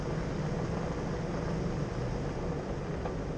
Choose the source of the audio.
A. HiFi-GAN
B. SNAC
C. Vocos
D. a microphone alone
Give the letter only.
D